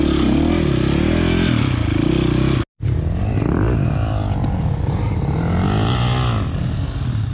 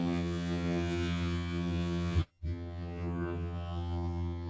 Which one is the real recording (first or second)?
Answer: first